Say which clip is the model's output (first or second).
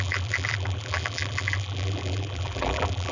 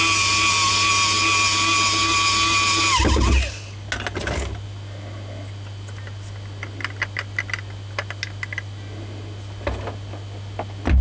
first